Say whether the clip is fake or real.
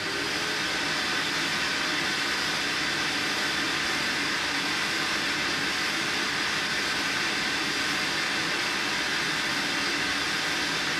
real